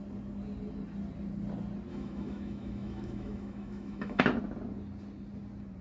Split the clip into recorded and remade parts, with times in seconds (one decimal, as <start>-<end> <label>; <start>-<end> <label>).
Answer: 0.0-1.9 recorded; 1.9-4.2 remade; 4.2-5.8 recorded